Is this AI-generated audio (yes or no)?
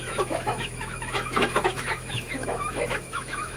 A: yes